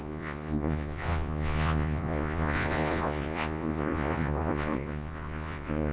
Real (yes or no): no